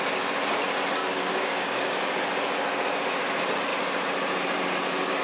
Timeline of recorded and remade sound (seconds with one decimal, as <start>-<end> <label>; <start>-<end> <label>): 0.0-1.0 recorded; 1.0-2.0 remade; 2.0-5.2 recorded